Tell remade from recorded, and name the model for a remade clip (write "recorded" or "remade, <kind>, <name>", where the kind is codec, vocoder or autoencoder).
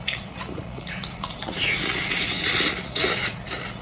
remade, vocoder, Vocos